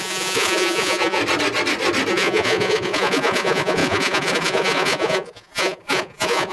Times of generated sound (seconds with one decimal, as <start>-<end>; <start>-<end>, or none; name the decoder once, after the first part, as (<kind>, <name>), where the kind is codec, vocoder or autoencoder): 0.0-1.2 (vocoder, Vocos); 2.1-6.5

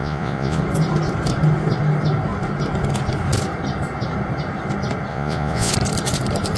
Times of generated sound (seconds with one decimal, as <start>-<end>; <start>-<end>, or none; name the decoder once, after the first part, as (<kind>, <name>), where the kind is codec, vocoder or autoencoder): 0.0-0.6 (vocoder, Vocos); 5.1-5.7